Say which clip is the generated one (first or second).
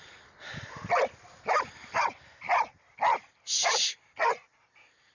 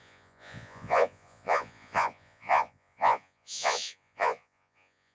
second